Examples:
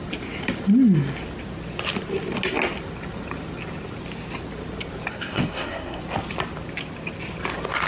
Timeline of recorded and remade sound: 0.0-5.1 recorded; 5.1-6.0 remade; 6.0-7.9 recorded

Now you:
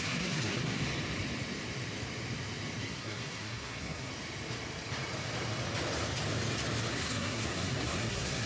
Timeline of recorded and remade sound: 0.0-0.8 remade; 0.8-2.8 recorded; 2.8-4.1 remade; 4.1-6.9 recorded; 6.9-8.5 remade